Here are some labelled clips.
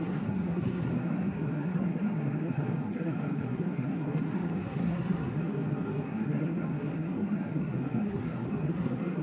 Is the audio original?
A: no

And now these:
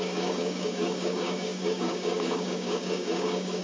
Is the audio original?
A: no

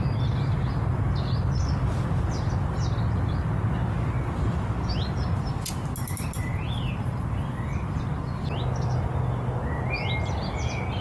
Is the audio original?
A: yes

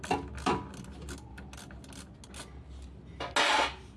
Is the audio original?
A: yes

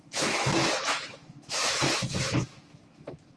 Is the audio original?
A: no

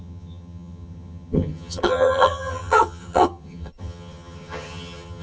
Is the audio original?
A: no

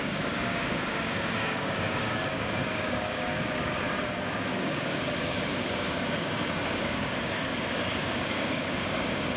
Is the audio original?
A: no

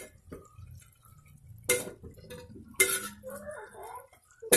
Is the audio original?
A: yes